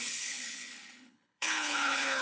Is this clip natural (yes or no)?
no